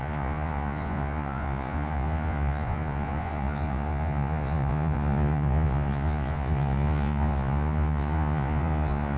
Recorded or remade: remade